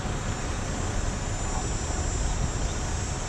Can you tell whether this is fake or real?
real